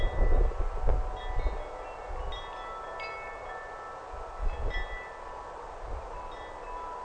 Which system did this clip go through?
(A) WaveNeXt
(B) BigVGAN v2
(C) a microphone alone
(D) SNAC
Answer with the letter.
C